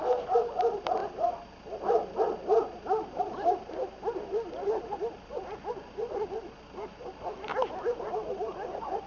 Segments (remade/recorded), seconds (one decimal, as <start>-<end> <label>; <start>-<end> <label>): 0.0-7.5 recorded; 7.5-9.1 remade